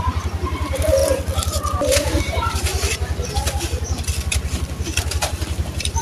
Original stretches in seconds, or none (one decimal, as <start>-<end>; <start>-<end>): 1.0-2.2; 2.7-5.0